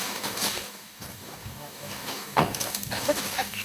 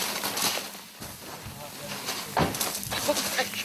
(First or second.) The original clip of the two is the second